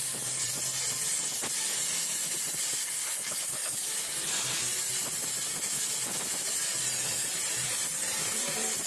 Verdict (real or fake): real